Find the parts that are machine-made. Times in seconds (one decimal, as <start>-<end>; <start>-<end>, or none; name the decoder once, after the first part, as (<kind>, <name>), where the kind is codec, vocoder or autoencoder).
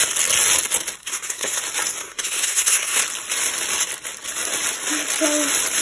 1.0-1.6 (codec, SNAC); 2.0-3.0